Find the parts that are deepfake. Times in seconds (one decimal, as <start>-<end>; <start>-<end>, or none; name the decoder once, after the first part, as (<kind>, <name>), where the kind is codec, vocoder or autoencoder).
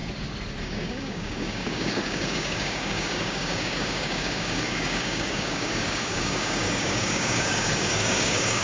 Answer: 0.6-8.6 (codec, DAC)